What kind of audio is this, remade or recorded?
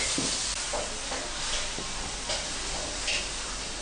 recorded